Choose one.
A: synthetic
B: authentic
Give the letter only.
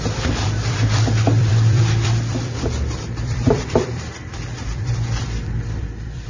A